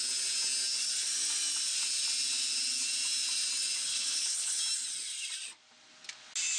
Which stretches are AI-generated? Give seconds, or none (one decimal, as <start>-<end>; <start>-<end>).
3.9-4.6